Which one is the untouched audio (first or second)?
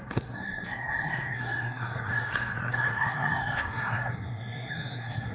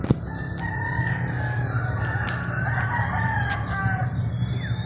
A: second